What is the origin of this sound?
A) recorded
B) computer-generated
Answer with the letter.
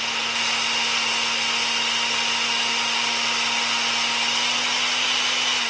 A